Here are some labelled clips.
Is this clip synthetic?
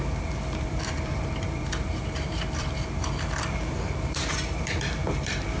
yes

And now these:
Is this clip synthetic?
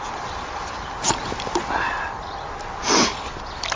no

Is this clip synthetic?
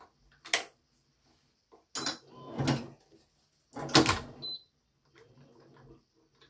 no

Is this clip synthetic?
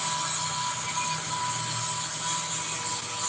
no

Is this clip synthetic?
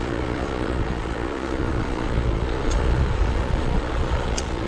yes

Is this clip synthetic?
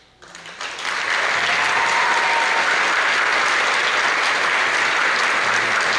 no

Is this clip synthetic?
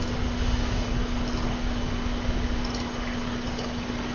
no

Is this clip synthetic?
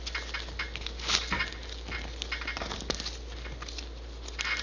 no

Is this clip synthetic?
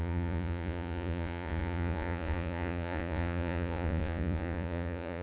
yes